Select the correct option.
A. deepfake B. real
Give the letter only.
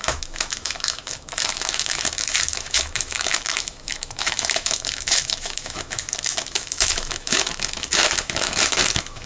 A